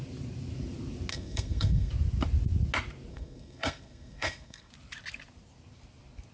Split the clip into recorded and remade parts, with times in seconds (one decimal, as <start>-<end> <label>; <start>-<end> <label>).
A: 0.0-1.1 recorded; 1.1-1.9 remade; 1.9-3.1 recorded; 3.1-4.7 remade; 4.7-6.3 recorded